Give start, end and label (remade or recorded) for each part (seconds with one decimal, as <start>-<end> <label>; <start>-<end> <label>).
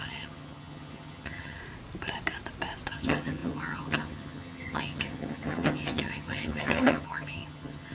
0.0-1.6 remade; 1.6-2.9 recorded; 2.9-7.9 remade